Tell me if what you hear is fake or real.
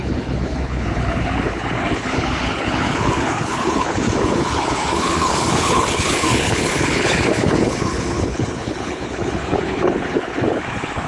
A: fake